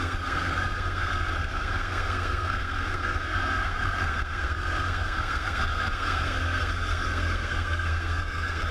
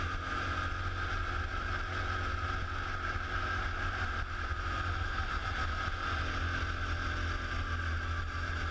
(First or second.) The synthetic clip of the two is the first